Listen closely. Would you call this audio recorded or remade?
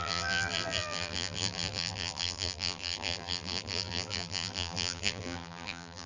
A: remade